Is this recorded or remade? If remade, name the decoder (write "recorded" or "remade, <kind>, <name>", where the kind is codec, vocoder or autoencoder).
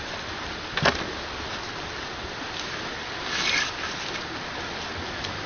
recorded